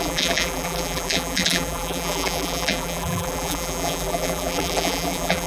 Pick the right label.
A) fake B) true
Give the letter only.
A